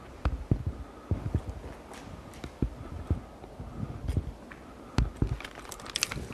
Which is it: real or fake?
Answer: real